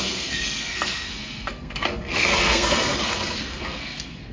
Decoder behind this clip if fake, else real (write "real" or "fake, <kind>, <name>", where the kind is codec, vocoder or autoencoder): fake, codec, SNAC